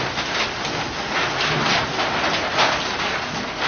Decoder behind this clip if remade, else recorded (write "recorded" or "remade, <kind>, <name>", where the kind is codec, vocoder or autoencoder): recorded